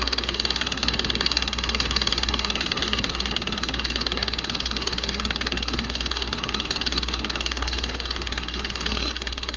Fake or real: fake